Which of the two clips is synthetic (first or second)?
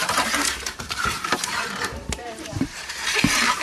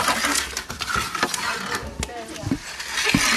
first